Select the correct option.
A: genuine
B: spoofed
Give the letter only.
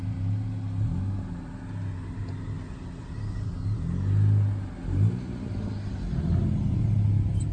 A